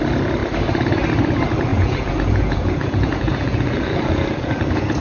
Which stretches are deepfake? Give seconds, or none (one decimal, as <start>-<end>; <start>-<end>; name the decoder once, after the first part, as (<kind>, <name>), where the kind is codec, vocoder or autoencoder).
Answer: 1.7-5.0 (vocoder, Vocos)